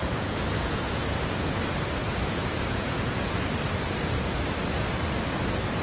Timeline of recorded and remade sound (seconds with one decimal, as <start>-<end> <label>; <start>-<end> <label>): 0.0-1.6 remade; 1.6-2.0 recorded; 2.0-3.3 remade; 3.3-5.8 recorded